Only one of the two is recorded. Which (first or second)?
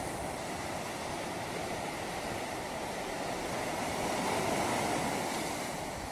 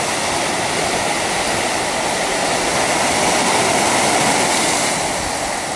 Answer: second